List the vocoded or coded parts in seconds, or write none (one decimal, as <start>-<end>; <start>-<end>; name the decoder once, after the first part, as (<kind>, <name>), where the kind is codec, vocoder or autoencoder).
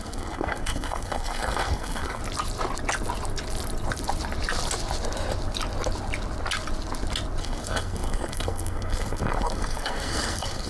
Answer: 0.0-2.2 (codec, SNAC); 7.4-10.7